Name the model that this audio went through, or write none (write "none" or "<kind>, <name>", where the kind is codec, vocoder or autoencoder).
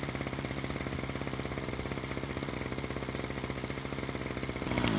none